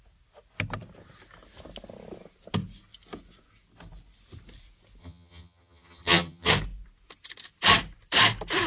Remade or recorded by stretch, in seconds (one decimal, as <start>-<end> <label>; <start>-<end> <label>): 0.0-5.0 recorded; 5.0-6.5 remade; 6.5-8.7 recorded